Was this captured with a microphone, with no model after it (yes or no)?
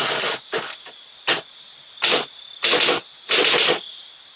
yes